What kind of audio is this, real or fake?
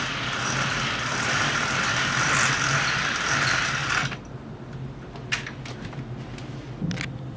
real